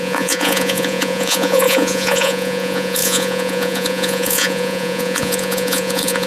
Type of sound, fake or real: fake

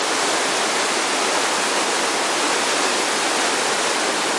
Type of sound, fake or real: real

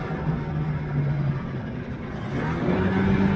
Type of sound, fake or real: real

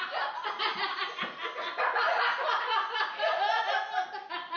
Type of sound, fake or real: real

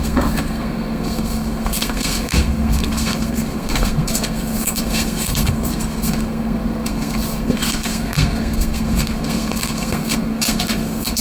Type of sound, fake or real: fake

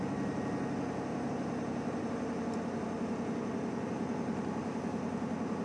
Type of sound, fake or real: real